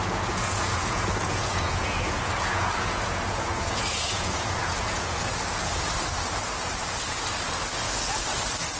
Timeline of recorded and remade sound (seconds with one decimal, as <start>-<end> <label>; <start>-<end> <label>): 0.0-5.2 remade; 5.2-8.8 recorded